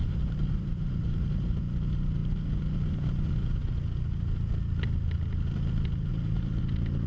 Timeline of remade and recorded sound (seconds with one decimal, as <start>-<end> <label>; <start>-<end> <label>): 0.0-1.6 remade; 1.6-6.1 recorded; 6.1-6.6 remade; 6.6-7.1 recorded